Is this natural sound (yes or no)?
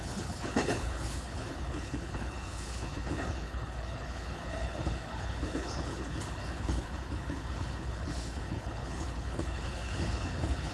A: no